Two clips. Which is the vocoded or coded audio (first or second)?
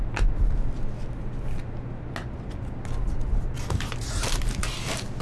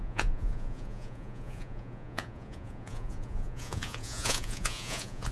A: second